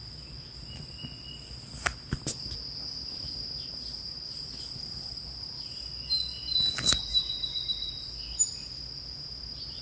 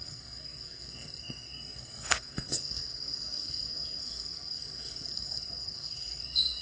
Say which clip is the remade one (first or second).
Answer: second